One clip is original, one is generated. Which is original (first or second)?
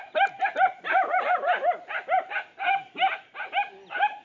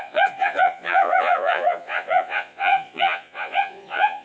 first